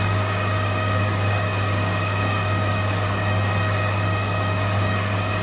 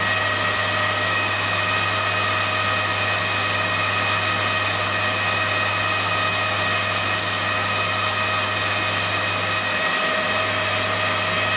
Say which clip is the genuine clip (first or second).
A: second